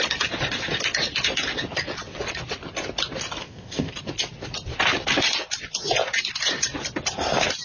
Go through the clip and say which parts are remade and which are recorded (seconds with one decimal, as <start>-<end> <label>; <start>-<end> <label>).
0.0-3.4 recorded; 3.4-3.9 remade; 3.9-7.6 recorded